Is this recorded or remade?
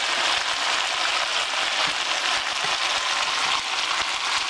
recorded